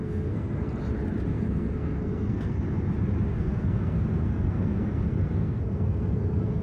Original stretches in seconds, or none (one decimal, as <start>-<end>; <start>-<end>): 0.7-1.3; 2.6-3.3